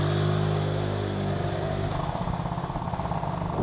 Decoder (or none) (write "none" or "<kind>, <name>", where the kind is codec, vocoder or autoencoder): none